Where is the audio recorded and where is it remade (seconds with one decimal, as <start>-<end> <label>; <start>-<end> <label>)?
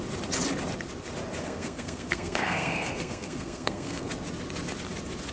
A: 0.0-1.4 recorded; 1.4-4.1 remade; 4.1-5.3 recorded